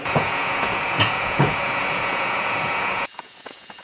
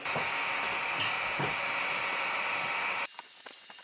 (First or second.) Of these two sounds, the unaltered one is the second